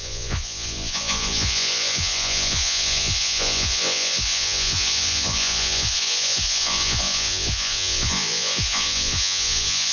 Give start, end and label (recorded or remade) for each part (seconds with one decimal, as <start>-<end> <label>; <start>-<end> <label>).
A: 0.0-9.9 remade